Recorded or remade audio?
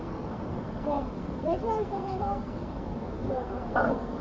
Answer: remade